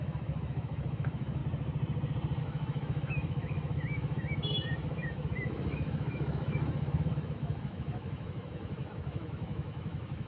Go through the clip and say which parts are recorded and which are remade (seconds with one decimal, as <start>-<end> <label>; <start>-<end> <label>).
0.0-1.4 remade; 1.4-2.4 recorded; 2.4-10.3 remade

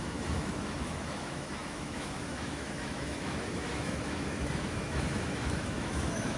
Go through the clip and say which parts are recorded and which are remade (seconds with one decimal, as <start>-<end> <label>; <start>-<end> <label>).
0.0-6.4 remade

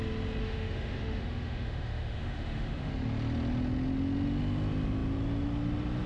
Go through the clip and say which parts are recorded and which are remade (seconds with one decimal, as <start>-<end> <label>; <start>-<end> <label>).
0.0-0.4 recorded; 0.4-2.9 remade; 2.9-6.1 recorded

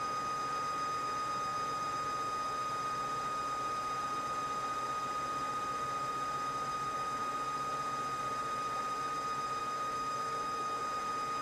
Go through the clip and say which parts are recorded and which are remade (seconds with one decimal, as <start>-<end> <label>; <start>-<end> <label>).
0.0-9.6 recorded; 9.6-10.8 remade; 10.8-11.4 recorded

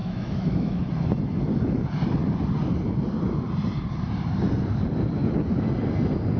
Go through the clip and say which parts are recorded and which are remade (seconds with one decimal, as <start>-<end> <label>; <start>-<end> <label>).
0.0-0.9 remade; 0.9-6.4 recorded

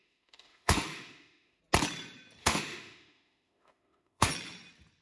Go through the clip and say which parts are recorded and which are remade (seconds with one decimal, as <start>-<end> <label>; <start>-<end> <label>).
0.0-1.6 remade; 1.6-2.4 recorded; 2.4-4.3 remade; 4.3-5.0 recorded

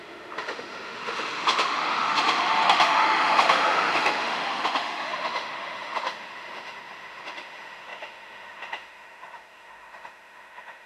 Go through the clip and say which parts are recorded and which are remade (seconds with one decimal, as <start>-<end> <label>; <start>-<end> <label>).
0.0-10.9 remade